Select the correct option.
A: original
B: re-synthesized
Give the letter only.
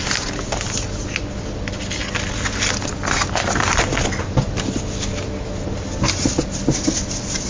A